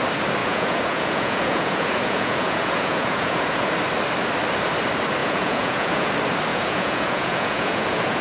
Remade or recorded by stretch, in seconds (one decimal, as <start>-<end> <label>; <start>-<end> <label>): 0.0-0.4 recorded; 0.4-3.7 remade; 3.7-5.2 recorded; 5.2-6.1 remade; 6.1-6.5 recorded; 6.5-8.2 remade

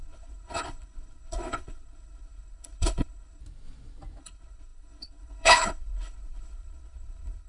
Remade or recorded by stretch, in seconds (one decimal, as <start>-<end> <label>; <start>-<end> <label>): 0.0-3.4 remade; 3.4-4.2 recorded; 4.2-7.5 remade

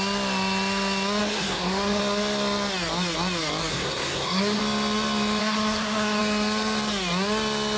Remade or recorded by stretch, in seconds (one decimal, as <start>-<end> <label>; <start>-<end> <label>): 0.0-1.2 recorded; 1.2-2.0 remade; 2.0-3.7 recorded; 3.7-4.6 remade; 4.6-5.4 recorded; 5.4-6.2 remade; 6.2-7.8 recorded